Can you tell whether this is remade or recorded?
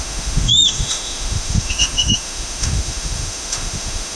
remade